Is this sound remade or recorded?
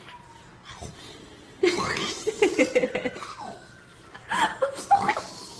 recorded